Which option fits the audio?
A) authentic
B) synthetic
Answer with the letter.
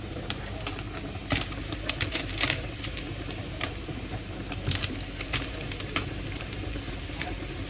B